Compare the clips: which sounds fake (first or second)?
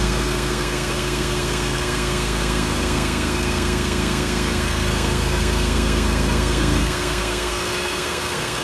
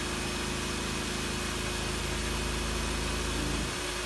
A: first